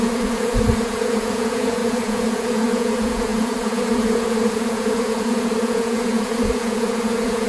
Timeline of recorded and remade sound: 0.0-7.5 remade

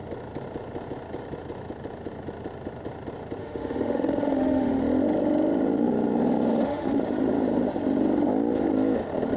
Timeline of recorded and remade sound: 0.0-3.4 recorded; 3.4-4.8 remade; 4.8-6.5 recorded; 6.5-7.0 remade; 7.0-9.4 recorded

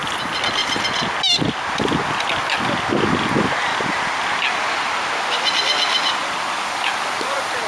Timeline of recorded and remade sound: 0.0-7.7 recorded

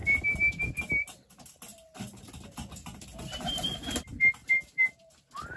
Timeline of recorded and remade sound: 0.0-0.8 remade; 0.8-1.7 recorded; 1.7-2.5 remade; 2.5-4.4 recorded; 4.4-5.6 remade